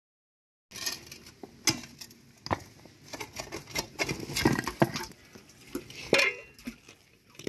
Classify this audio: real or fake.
real